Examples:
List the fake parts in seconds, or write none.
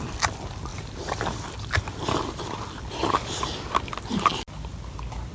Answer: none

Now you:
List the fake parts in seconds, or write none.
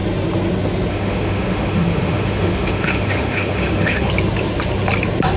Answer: 0.9-4.1 (autoencoder, DAC-VAE)